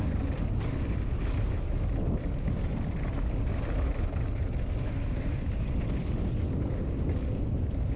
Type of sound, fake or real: real